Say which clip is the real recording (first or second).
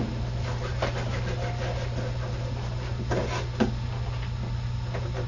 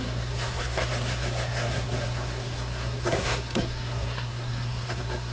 first